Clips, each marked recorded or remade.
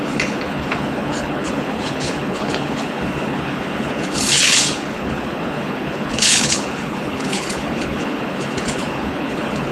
remade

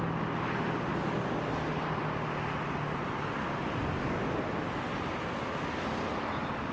recorded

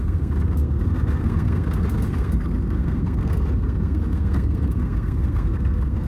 remade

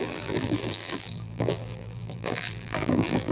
remade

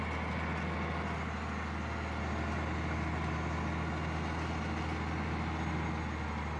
recorded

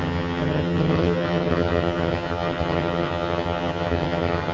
remade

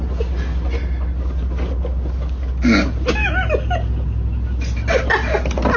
recorded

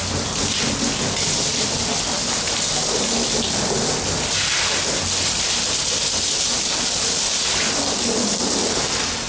recorded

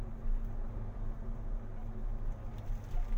recorded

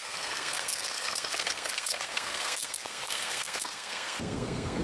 remade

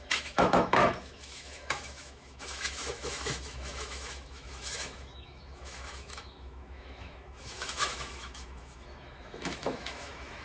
remade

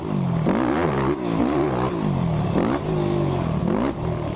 recorded